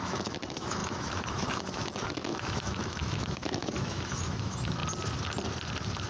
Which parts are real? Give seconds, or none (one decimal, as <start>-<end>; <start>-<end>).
4.8-6.1